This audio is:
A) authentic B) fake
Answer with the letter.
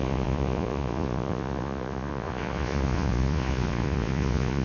B